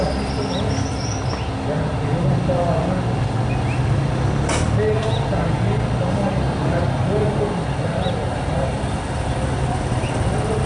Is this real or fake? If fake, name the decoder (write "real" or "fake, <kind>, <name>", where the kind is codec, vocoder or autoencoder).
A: real